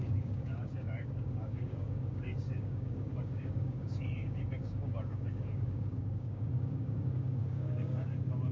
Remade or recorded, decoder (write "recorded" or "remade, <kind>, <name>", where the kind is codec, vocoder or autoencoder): remade, codec, DAC